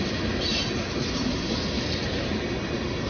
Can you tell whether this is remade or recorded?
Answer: recorded